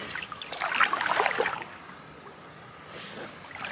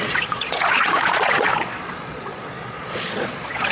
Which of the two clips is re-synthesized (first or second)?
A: second